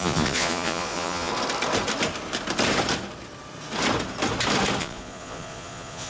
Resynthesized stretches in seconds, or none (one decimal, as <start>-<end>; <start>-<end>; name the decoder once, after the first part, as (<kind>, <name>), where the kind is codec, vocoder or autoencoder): 0.0-1.3 (vocoder, Vocos); 4.8-6.1